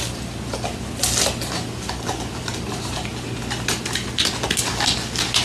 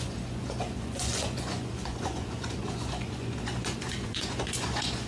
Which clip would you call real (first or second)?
first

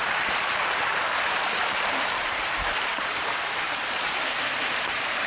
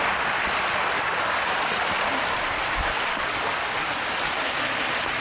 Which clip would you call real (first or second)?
second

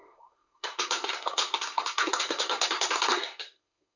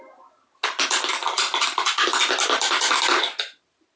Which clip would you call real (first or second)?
second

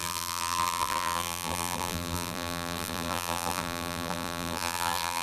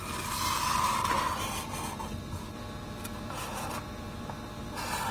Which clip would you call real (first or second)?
second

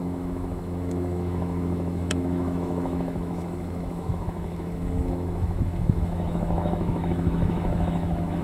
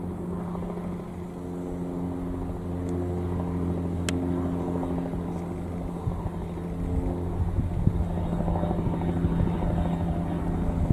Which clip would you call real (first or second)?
second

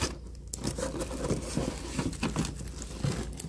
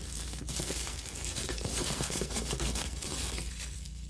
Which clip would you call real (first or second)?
first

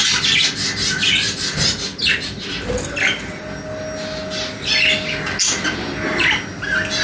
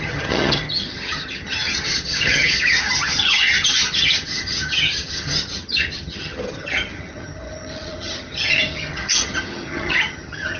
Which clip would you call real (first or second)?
first